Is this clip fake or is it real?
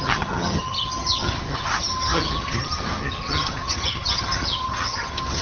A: fake